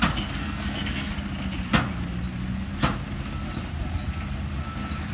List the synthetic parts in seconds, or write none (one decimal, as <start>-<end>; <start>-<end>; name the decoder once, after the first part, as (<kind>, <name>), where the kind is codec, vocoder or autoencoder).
0.4-1.1 (codec, SNAC)